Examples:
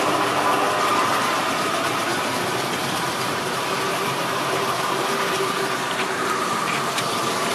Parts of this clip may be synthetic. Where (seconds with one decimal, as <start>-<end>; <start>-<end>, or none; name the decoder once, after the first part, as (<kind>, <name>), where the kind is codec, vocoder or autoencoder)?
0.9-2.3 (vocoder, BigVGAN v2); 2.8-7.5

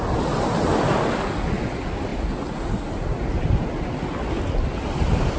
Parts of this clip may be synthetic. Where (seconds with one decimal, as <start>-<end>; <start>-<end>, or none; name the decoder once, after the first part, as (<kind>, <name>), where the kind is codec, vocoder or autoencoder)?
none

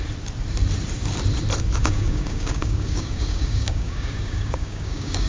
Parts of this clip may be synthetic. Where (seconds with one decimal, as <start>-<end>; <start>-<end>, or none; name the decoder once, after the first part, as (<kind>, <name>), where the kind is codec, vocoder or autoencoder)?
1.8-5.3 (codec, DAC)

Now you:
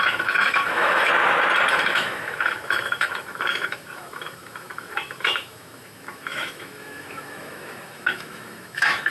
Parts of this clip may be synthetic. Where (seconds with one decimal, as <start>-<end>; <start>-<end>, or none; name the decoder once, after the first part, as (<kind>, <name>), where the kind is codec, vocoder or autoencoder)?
0.0-1.1 (autoencoder, DAC-VAE); 1.7-9.1